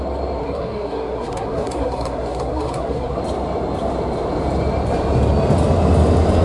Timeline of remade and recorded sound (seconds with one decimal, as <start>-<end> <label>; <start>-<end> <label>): 0.0-0.4 recorded; 0.4-3.2 remade; 3.2-6.4 recorded